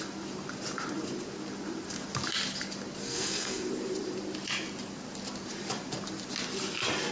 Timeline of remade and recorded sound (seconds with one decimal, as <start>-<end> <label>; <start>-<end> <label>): 0.0-3.0 recorded; 3.0-3.7 remade; 3.7-7.1 recorded

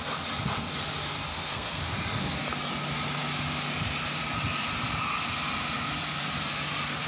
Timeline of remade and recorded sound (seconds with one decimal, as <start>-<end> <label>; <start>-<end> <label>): 0.0-1.3 recorded; 1.3-1.8 remade; 1.8-7.1 recorded

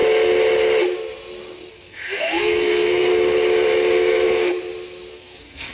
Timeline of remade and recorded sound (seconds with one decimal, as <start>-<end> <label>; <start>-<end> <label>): 0.0-1.7 recorded; 1.7-3.1 remade; 3.1-3.9 recorded; 3.9-4.5 remade; 4.5-5.1 recorded; 5.1-5.7 remade